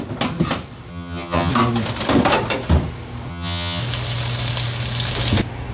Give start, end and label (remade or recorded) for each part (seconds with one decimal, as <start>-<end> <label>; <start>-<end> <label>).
0.0-0.9 recorded; 0.9-1.5 remade; 1.5-3.3 recorded; 3.3-3.8 remade; 3.8-5.7 recorded